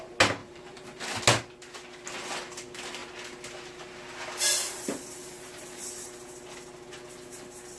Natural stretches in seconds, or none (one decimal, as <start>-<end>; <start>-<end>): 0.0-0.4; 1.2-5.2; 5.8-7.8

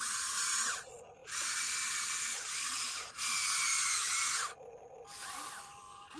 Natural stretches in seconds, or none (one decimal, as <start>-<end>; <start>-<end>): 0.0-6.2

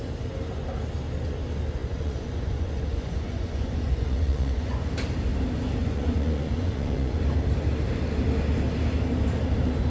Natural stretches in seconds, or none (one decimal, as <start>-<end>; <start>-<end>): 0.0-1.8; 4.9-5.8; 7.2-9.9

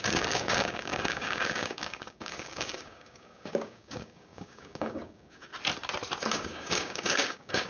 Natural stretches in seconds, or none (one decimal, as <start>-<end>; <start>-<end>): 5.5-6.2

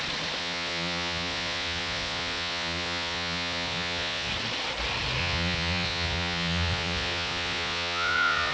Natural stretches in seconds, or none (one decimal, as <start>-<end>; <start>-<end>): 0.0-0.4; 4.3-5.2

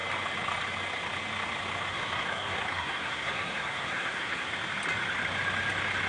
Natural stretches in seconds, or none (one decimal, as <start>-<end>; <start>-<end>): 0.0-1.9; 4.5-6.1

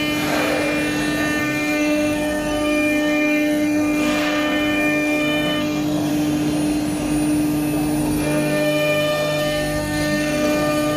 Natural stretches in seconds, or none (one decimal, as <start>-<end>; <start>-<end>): 0.0-1.4; 6.1-8.0

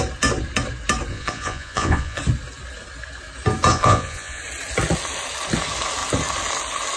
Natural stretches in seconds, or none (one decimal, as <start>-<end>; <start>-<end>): 0.0-1.1; 2.2-3.7; 4.4-7.0